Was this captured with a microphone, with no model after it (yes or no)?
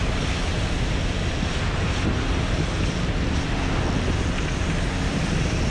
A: yes